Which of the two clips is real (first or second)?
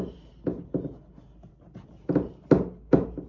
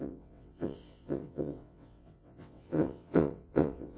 first